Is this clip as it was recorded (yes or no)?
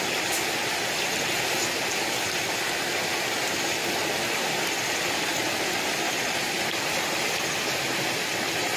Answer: yes